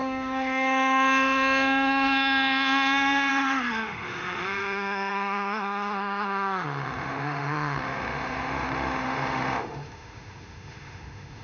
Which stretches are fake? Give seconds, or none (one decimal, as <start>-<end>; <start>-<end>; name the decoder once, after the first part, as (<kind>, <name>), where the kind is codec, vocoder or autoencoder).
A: 0.0-11.4 (autoencoder, DAC-VAE)